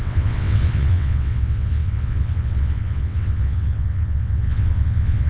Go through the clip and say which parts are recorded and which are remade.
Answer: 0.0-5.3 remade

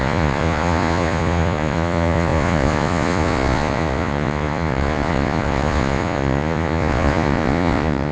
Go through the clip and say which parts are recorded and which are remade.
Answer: 0.0-8.1 remade

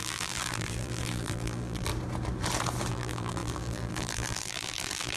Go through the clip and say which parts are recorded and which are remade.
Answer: 0.0-1.9 remade; 1.9-2.9 recorded; 2.9-5.2 remade

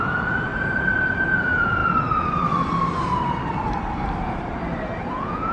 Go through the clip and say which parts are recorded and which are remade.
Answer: 0.0-0.5 remade; 0.5-1.4 recorded; 1.4-1.8 remade; 1.8-5.1 recorded; 5.1-5.5 remade

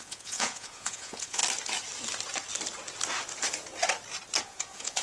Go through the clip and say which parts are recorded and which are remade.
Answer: 0.0-1.4 remade; 1.4-4.4 recorded; 4.4-5.0 remade

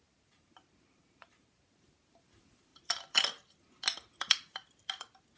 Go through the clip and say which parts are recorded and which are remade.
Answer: 0.0-2.7 remade; 2.7-5.4 recorded

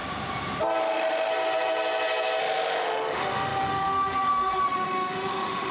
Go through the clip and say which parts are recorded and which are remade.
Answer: 0.0-0.8 recorded; 0.8-1.3 remade; 1.3-2.4 recorded; 2.4-5.7 remade

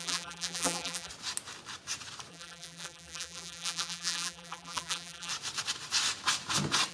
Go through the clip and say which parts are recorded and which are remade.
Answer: 0.0-1.1 remade; 1.1-2.3 recorded; 2.3-5.3 remade; 5.3-6.9 recorded